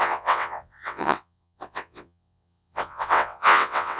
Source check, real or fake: fake